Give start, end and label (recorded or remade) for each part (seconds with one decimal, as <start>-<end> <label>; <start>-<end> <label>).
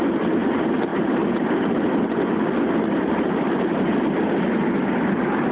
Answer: 0.0-5.5 recorded